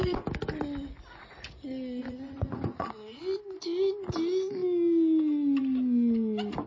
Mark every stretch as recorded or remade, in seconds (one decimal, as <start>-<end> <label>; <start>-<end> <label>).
0.0-2.0 recorded; 2.0-3.2 remade; 3.2-6.7 recorded